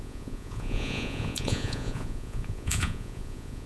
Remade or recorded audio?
remade